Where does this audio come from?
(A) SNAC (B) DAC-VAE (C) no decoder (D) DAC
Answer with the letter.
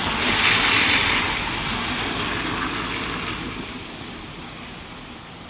C